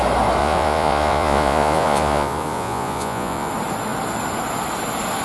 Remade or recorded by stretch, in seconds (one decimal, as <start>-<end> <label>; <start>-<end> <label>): 0.0-0.4 recorded; 0.4-3.5 remade; 3.5-5.2 recorded